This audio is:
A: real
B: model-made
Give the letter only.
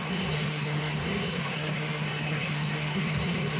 B